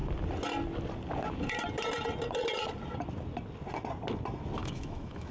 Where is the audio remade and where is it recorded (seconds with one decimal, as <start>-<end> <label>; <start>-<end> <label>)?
0.0-4.6 recorded; 4.6-5.3 remade